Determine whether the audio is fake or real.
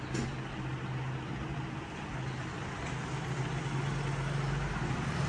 real